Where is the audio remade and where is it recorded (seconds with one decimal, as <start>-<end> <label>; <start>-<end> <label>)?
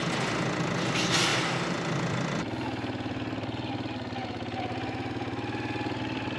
0.0-1.3 recorded; 1.3-2.4 remade; 2.4-6.4 recorded